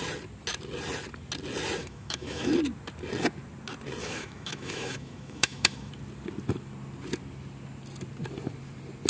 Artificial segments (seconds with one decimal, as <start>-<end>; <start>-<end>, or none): 1.8-2.5; 4.0-5.9